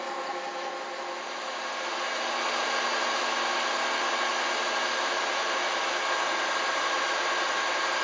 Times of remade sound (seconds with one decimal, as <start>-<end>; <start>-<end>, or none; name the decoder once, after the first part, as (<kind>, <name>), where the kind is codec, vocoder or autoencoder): none